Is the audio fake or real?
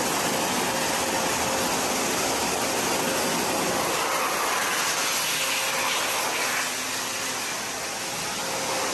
real